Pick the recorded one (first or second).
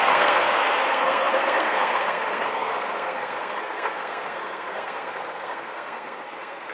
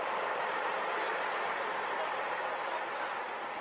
second